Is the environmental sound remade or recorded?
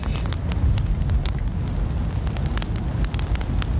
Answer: recorded